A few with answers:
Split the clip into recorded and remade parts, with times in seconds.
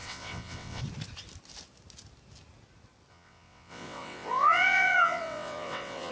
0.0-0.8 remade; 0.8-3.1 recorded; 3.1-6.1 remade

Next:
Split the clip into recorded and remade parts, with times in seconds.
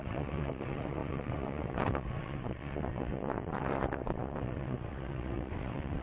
0.0-6.0 remade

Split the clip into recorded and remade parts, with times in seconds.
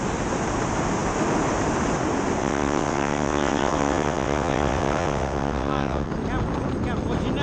0.0-2.4 recorded; 2.4-6.1 remade; 6.1-7.4 recorded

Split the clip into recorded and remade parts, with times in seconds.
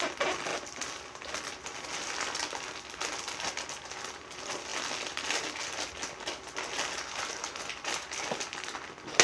0.0-9.2 recorded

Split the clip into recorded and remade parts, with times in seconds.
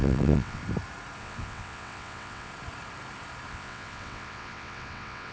0.0-0.6 remade; 0.6-1.2 recorded; 1.2-2.5 remade; 2.5-3.5 recorded; 3.5-5.3 remade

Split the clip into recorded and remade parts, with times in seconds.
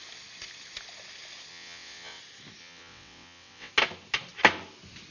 0.0-1.5 recorded; 1.5-2.2 remade; 2.2-2.6 recorded; 2.6-3.7 remade; 3.7-5.1 recorded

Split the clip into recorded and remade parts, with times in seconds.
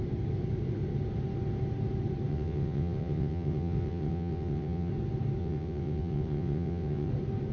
0.0-2.3 recorded; 2.3-4.9 remade; 4.9-5.4 recorded; 5.4-7.1 remade; 7.1-7.5 recorded